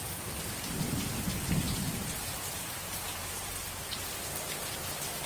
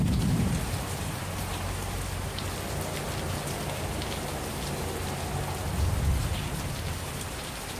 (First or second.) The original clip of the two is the second